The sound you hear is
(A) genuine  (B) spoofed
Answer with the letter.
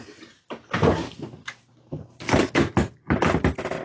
A